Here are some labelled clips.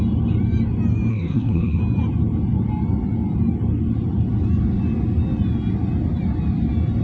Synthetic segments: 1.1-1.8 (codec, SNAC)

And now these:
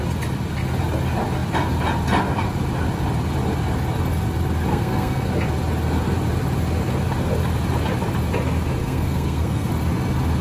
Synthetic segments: 4.7-5.3 (codec, SNAC); 8.8-9.7

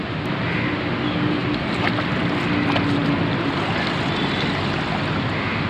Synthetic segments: none

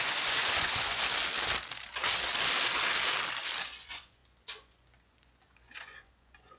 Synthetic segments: 0.0-1.0 (vocoder, Vocos); 3.6-6.6

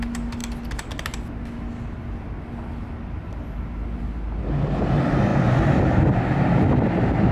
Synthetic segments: none

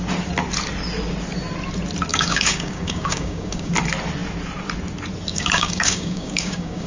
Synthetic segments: 2.1-3.7 (codec, DAC); 5.3-6.9

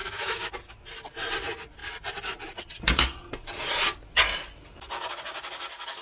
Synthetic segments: 0.0-0.5 (autoencoder, DAC-VAE)